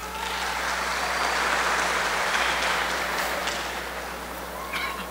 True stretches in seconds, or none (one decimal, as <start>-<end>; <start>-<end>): 0.0-2.0; 3.4-5.1